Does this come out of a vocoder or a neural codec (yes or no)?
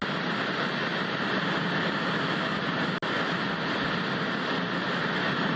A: no